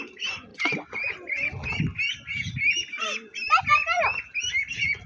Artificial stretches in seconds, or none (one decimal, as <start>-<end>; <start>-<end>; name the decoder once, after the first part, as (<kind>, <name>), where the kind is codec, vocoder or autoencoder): none